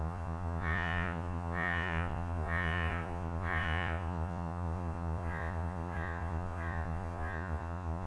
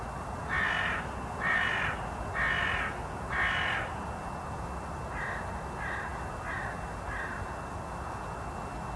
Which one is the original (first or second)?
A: second